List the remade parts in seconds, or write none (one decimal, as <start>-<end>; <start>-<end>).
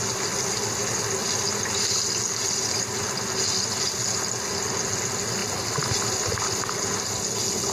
none